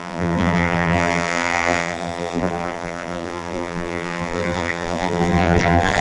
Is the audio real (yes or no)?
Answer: no